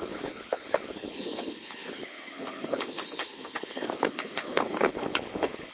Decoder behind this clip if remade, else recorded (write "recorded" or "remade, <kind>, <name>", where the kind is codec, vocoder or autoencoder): remade, codec, HILCodec